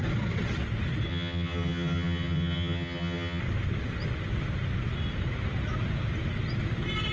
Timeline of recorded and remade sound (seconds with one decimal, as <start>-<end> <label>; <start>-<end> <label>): 0.0-1.1 recorded; 1.1-3.4 remade; 3.4-7.1 recorded